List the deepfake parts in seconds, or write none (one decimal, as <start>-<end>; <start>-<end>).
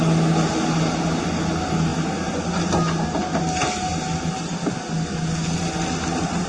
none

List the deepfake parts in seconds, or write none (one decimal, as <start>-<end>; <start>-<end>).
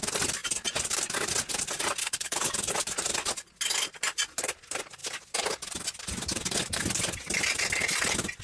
2.0-2.5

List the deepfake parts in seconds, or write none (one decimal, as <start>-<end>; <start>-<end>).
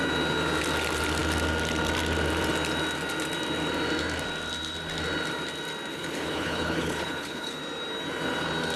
5.9-7.6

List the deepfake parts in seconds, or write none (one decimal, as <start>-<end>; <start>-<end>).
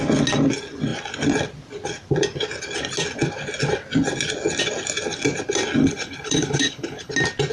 5.8-7.1